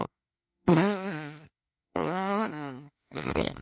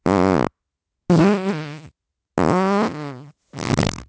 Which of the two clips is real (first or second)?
second